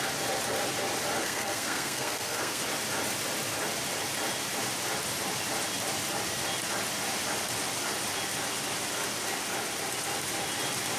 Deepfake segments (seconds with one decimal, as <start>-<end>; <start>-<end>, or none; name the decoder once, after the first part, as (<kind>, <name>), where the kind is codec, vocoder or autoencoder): 1.2-2.6 (codec, SNAC)

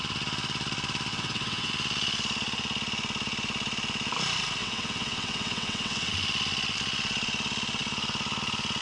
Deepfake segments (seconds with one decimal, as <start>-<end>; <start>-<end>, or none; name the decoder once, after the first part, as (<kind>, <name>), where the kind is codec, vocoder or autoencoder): 1.1-1.7 (vocoder, WaveNeXt); 4.6-6.1